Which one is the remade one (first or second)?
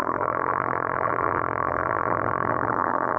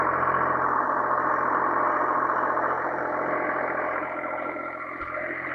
first